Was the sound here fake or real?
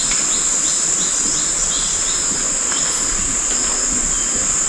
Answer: real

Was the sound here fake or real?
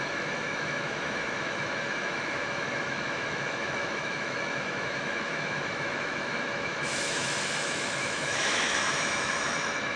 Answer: fake